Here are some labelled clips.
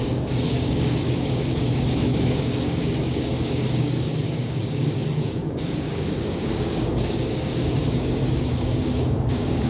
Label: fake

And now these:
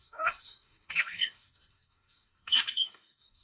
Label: fake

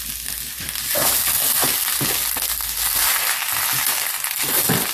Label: real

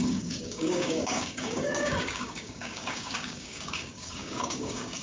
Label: fake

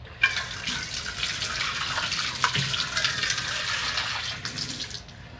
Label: real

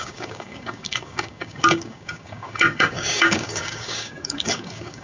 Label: fake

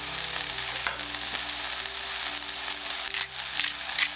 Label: real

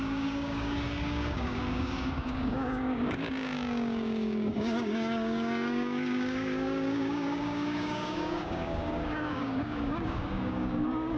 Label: fake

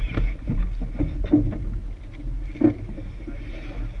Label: real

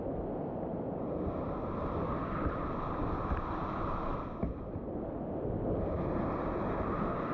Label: real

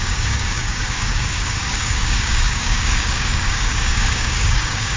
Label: fake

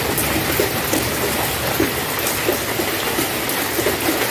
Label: real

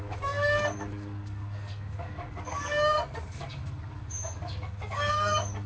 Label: fake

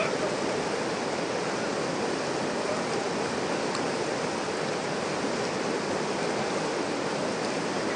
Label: real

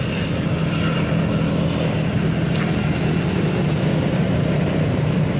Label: real